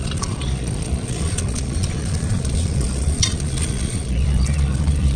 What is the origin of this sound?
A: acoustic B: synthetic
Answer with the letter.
B